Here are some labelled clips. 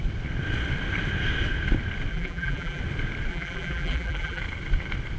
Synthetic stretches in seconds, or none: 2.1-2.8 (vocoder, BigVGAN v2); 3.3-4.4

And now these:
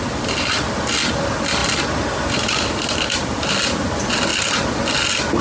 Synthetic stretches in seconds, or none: none

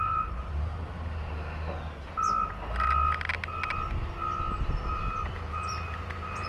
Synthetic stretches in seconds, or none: 0.0-0.7 (vocoder, BigVGAN v2); 4.6-6.5

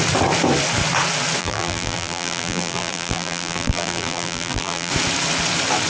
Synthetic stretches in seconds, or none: 1.4-4.9 (vocoder, BigVGAN v2)

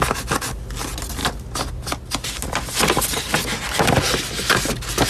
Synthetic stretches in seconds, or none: none

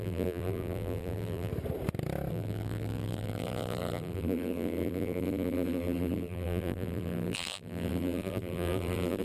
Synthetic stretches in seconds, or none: 0.0-1.5 (vocoder, BigVGAN v2); 2.3-9.2